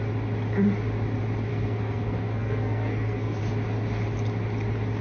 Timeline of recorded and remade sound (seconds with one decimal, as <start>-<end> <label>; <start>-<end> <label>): 0.0-1.5 recorded; 1.5-3.4 remade; 3.4-5.0 recorded

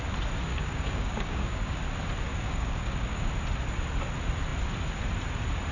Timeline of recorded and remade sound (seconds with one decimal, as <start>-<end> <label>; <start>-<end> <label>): 0.0-0.5 recorded; 0.5-1.8 remade; 1.8-2.3 recorded; 2.3-3.3 remade; 3.3-5.7 recorded

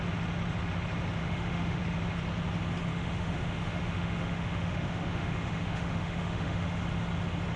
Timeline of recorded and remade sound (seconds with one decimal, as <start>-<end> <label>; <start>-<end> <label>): 0.0-1.2 recorded; 1.2-1.8 remade; 1.8-2.9 recorded; 2.9-6.8 remade; 6.8-7.6 recorded

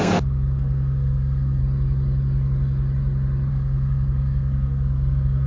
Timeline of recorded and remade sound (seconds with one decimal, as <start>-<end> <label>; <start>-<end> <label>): 0.0-1.6 remade; 1.6-3.5 recorded; 3.5-5.5 remade

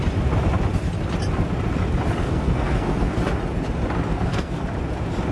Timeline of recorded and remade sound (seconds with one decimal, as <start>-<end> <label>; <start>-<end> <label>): 0.0-2.2 recorded; 2.2-3.2 remade; 3.2-4.1 recorded; 4.1-4.6 remade; 4.6-5.3 recorded

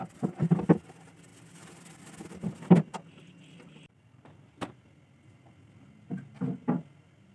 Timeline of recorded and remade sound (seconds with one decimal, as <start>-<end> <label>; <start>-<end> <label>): 0.0-7.3 recorded

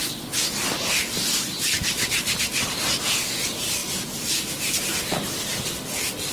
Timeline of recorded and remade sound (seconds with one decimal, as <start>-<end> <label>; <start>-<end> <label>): 0.0-1.3 recorded; 1.3-3.1 remade; 3.1-3.8 recorded; 3.8-4.8 remade; 4.8-6.3 recorded